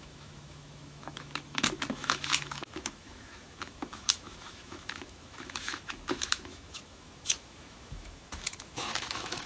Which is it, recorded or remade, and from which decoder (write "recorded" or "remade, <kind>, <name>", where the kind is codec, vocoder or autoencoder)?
remade, autoencoder, DAC-VAE